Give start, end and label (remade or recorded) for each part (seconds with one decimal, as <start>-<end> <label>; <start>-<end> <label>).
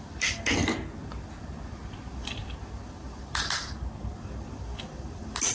0.0-5.5 recorded